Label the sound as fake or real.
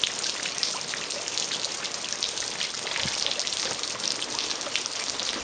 real